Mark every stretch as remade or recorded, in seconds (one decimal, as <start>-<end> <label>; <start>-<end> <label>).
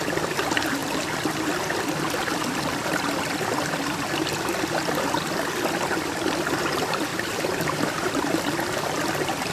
0.0-7.1 recorded; 7.1-8.2 remade; 8.2-9.5 recorded